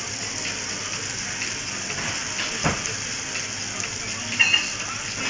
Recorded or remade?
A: recorded